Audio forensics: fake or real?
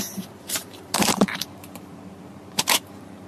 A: fake